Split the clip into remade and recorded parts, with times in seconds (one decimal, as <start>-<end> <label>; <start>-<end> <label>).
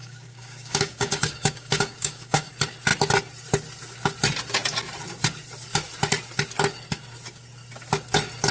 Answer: 0.0-2.5 remade; 2.5-8.5 recorded